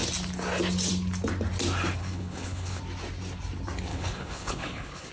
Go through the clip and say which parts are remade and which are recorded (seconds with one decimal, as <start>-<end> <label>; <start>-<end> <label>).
0.0-2.0 recorded; 2.0-2.8 remade; 2.8-3.9 recorded; 3.9-5.1 remade